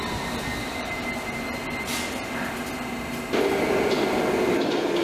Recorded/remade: recorded